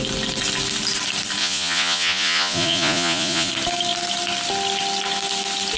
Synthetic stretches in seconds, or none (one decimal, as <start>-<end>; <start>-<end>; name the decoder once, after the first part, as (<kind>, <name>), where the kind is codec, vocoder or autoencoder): 1.4-3.5 (vocoder, Vocos)